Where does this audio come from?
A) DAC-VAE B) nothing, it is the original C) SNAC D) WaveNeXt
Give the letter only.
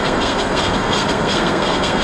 C